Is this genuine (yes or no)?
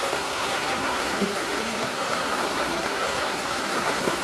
no